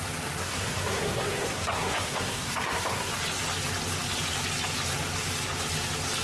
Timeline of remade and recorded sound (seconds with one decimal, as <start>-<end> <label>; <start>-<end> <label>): 0.0-0.4 recorded; 0.4-3.1 remade; 3.1-6.2 recorded